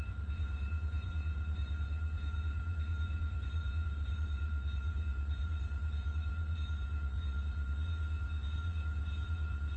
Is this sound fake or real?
fake